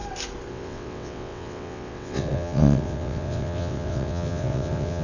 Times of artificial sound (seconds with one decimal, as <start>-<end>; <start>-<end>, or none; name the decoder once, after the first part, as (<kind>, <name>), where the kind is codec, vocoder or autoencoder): 0.5-5.0 (vocoder, WaveNeXt)